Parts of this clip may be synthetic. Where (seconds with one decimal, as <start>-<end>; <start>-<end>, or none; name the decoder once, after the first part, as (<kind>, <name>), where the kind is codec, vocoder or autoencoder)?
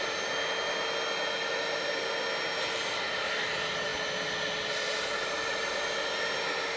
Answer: none